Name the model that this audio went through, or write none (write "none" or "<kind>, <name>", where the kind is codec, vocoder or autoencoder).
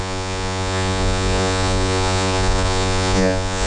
vocoder, Vocos